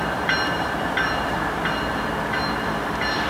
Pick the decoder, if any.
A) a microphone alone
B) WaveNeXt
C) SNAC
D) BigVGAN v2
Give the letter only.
D